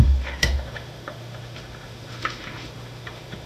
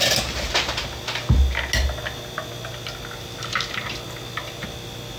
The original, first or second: second